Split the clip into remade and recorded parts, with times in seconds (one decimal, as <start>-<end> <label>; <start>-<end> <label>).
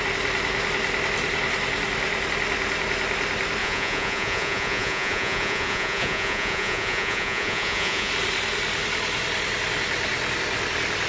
0.0-3.6 recorded; 3.6-8.1 remade; 8.1-11.1 recorded